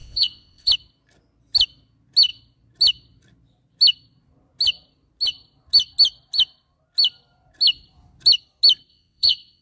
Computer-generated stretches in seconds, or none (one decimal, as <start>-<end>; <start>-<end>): 0.0-0.7; 8.9-9.6